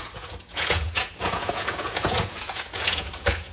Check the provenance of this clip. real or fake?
fake